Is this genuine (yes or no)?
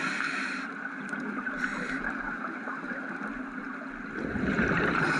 yes